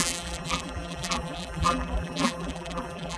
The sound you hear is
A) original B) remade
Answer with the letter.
B